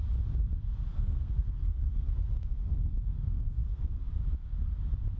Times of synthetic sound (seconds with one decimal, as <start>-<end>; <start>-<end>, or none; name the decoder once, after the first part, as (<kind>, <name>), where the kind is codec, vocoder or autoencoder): 0.9-4.0 (codec, SNAC)